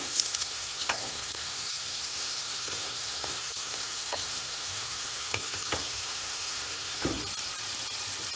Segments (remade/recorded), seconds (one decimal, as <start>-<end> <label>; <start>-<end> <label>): 0.0-7.1 remade; 7.1-8.4 recorded